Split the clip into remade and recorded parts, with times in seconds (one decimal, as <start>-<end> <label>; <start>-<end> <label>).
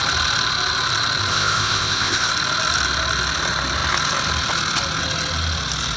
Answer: 0.0-1.3 recorded; 1.3-2.3 remade; 2.3-6.0 recorded